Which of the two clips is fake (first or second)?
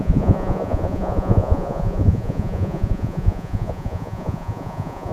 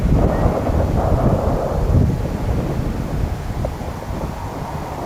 first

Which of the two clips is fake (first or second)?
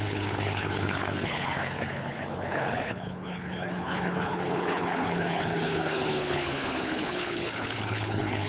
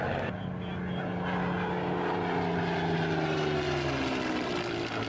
first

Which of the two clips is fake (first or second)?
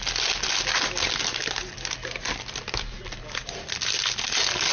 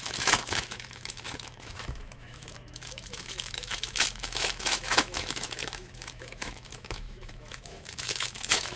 second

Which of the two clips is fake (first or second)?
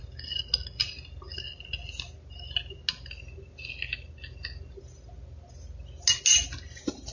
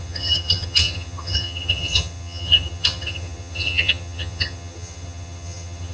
second